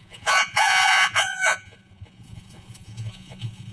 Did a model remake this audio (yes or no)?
yes